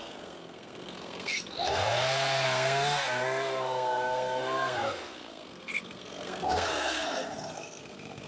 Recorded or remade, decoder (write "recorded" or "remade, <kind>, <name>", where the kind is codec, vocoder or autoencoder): remade, codec, SNAC